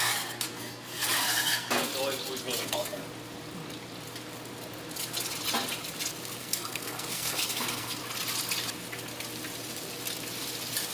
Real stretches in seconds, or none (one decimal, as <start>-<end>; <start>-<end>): 1.9-2.6; 3.0-6.4; 8.0-10.9